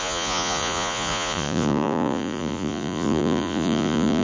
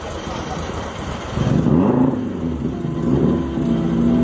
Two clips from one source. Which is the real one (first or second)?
second